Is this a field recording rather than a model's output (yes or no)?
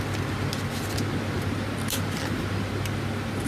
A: yes